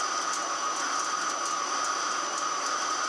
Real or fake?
real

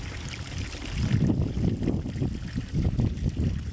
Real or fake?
real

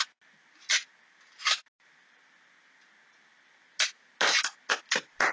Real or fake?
real